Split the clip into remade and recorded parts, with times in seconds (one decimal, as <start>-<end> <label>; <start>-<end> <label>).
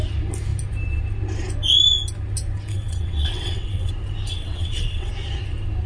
0.0-2.7 recorded; 2.7-3.9 remade; 3.9-4.3 recorded; 4.3-5.1 remade; 5.1-5.9 recorded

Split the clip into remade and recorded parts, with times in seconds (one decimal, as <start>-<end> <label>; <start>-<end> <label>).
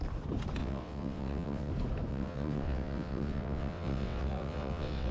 0.0-0.6 recorded; 0.6-1.7 remade; 1.7-2.1 recorded; 2.1-5.1 remade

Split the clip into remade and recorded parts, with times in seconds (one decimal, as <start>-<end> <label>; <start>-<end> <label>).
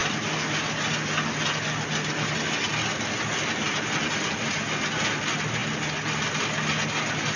0.0-7.4 recorded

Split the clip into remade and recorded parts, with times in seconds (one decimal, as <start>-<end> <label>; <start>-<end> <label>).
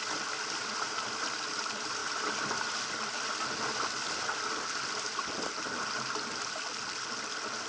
0.0-7.7 recorded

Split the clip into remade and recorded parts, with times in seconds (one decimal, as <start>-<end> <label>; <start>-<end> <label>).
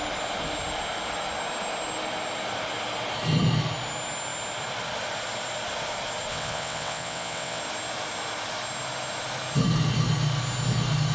0.0-6.3 recorded; 6.3-7.6 remade; 7.6-11.1 recorded